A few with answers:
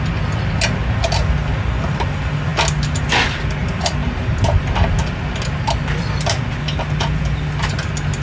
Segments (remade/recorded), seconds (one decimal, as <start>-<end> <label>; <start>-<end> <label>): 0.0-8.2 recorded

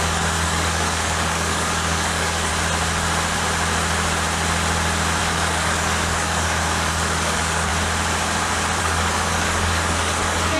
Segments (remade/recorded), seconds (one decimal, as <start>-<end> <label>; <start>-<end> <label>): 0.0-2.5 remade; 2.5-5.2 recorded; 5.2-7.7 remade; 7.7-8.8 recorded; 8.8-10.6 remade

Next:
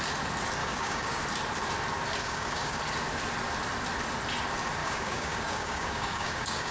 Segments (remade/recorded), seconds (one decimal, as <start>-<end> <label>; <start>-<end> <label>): 0.0-0.6 recorded; 0.6-1.2 remade; 1.2-2.2 recorded; 2.2-2.8 remade; 2.8-4.8 recorded; 4.8-6.7 remade